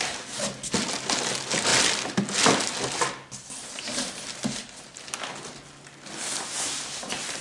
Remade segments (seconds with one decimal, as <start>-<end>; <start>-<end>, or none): none